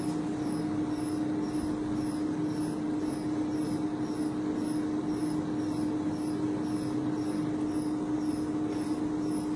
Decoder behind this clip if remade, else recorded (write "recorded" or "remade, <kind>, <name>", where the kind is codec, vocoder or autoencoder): recorded